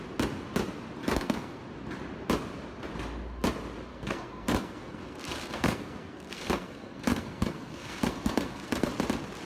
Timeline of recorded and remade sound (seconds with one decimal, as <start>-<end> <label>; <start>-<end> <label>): 0.0-1.0 recorded; 1.0-1.6 remade; 1.6-3.9 recorded; 3.9-8.9 remade; 8.9-9.4 recorded